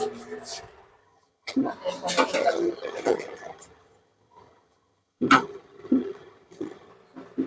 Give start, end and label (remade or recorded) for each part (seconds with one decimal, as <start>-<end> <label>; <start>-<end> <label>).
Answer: 0.0-1.0 recorded; 1.0-1.7 remade; 1.7-2.4 recorded; 2.4-6.9 remade; 6.9-7.5 recorded